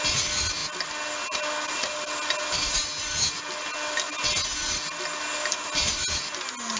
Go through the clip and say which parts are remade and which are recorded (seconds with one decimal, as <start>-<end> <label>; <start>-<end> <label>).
0.0-6.8 recorded

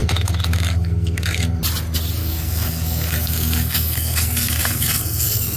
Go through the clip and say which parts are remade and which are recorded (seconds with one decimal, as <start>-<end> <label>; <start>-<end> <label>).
0.0-1.6 remade; 1.6-2.2 recorded; 2.2-5.6 remade

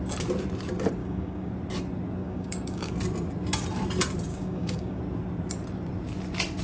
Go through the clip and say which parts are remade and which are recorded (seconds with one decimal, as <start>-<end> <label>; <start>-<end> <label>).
0.0-1.0 recorded; 1.0-1.5 remade; 1.5-2.2 recorded; 2.2-2.9 remade; 2.9-4.3 recorded; 4.3-5.0 remade; 5.0-6.6 recorded